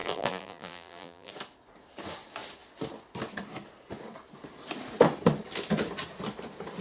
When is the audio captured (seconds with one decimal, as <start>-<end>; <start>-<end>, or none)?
1.3-6.8